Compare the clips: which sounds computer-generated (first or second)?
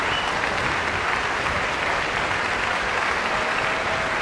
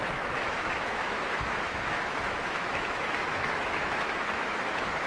second